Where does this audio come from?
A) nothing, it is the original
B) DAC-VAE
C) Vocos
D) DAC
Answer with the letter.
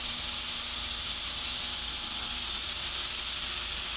A